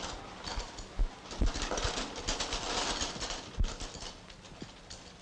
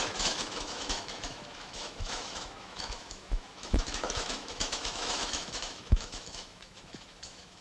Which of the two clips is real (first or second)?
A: first